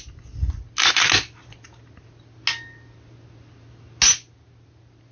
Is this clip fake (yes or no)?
no